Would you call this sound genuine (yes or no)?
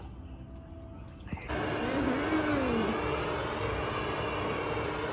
yes